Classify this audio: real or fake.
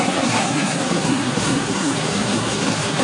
fake